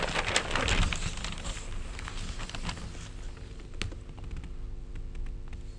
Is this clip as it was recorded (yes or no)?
yes